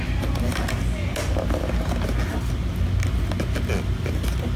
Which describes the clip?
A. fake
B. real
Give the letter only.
B